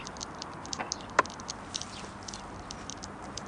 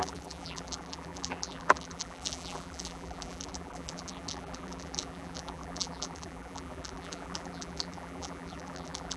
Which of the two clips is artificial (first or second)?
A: second